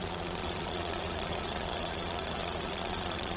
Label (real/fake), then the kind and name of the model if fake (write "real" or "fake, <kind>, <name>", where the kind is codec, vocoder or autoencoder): fake, vocoder, Vocos